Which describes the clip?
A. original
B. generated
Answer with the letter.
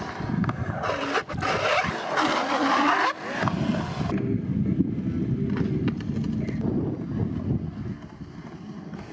A